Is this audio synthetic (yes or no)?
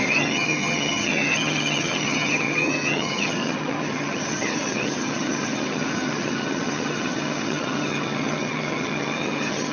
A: yes